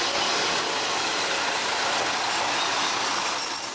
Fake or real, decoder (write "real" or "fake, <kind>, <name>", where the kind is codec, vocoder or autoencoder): real